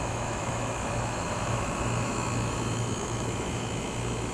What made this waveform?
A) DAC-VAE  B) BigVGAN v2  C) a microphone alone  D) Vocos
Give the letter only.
A